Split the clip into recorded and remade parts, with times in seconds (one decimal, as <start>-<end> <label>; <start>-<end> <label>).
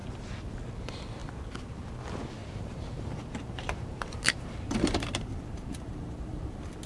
0.0-0.5 remade; 0.5-2.4 recorded; 2.4-6.5 remade; 6.5-6.9 recorded